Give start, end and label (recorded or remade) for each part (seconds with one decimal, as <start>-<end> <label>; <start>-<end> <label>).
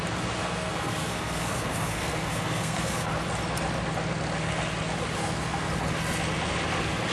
0.0-0.4 recorded; 0.4-3.1 remade; 3.1-5.2 recorded; 5.2-5.7 remade; 5.7-7.1 recorded